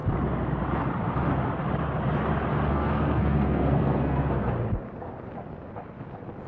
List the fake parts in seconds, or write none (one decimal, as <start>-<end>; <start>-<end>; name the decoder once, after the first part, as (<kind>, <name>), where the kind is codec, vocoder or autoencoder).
2.7-4.5 (codec, SNAC)